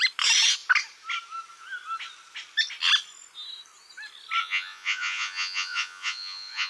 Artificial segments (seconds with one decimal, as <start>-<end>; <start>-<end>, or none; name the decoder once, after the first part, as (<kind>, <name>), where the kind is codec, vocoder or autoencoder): 4.4-6.7 (vocoder, Vocos)